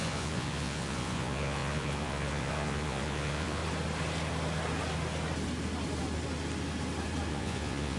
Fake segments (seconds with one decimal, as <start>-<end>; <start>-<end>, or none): 0.0-3.6; 7.3-8.0